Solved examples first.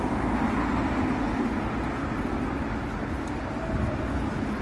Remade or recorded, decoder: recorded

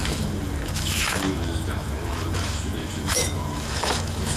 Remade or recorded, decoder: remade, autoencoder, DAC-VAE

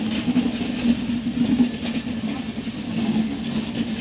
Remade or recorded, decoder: recorded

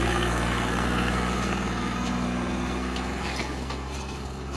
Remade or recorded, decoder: remade, codec, SNAC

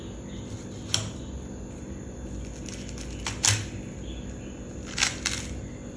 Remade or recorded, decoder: recorded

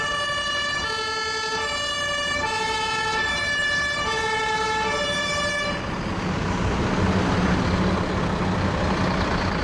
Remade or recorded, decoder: recorded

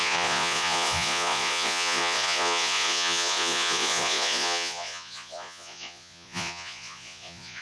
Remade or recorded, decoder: remade, vocoder, Vocos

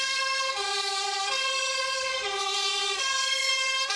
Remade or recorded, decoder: remade, codec, SNAC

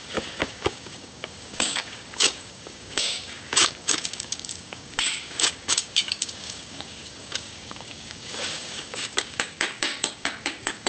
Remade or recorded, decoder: remade, codec, DAC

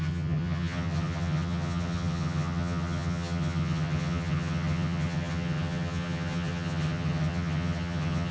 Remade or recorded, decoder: remade, vocoder, HiFi-GAN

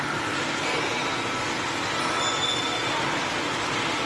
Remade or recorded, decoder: recorded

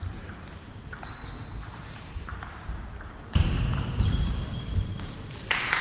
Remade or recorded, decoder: remade, vocoder, BigVGAN v2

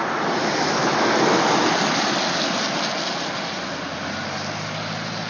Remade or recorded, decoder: recorded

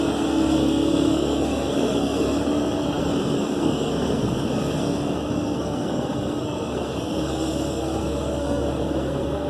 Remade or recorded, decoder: remade, codec, SNAC